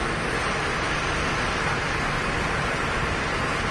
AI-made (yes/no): no